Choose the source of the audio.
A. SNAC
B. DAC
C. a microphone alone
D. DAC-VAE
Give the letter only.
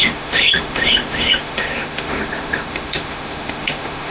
D